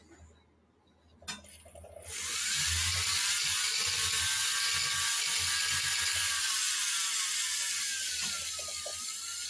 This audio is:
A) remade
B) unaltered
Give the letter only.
B